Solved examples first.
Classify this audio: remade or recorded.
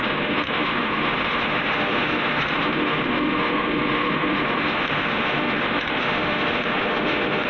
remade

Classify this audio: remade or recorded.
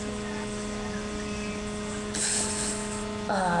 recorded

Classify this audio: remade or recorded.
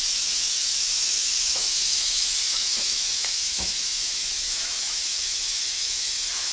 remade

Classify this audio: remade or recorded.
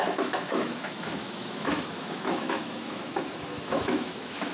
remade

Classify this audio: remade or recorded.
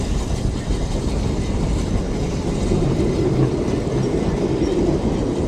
recorded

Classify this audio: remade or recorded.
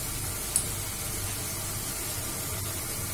recorded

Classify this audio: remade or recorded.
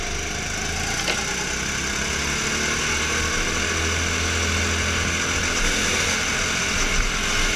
recorded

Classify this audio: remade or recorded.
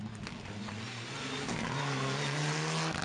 recorded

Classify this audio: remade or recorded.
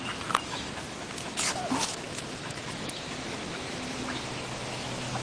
remade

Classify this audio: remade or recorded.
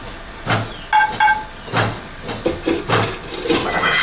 recorded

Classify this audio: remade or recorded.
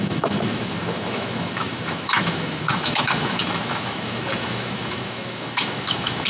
remade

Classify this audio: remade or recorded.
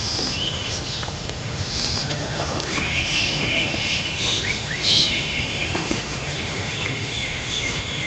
remade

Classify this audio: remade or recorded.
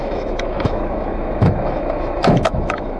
remade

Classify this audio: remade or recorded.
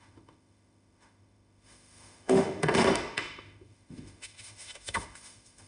remade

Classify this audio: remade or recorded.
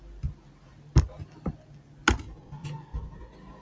recorded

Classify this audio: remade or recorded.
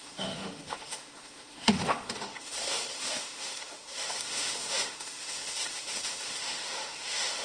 remade